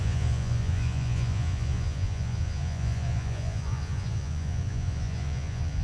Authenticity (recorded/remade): remade